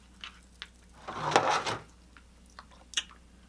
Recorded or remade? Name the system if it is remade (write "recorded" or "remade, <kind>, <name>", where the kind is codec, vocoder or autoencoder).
recorded